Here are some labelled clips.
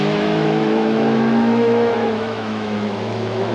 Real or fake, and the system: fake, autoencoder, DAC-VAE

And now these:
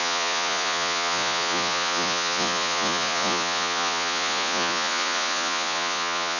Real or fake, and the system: fake, vocoder, Vocos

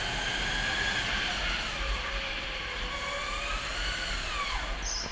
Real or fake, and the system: real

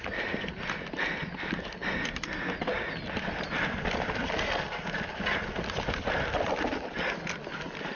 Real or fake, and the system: real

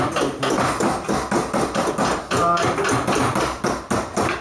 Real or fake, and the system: real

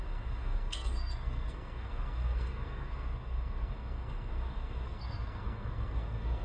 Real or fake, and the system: fake, codec, SNAC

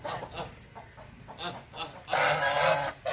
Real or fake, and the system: real